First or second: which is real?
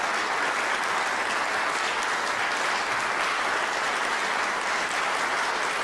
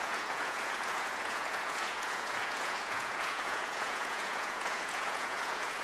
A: first